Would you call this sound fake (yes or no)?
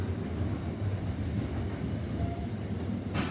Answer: no